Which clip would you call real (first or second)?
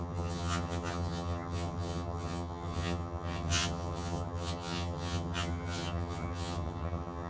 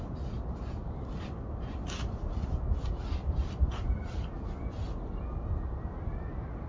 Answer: second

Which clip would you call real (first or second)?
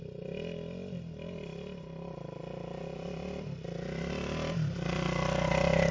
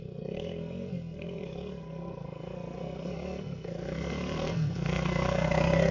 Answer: first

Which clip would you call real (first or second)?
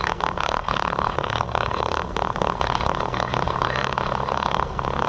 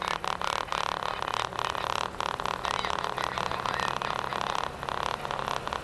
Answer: second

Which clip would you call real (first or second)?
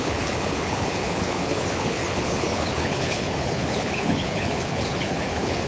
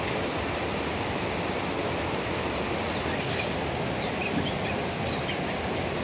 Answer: second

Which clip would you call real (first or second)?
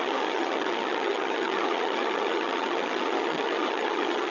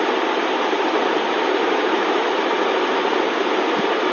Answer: second